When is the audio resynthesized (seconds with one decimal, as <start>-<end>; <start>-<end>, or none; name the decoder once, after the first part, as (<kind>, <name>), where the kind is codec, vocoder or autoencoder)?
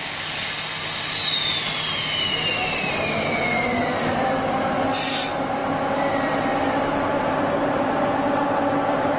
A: none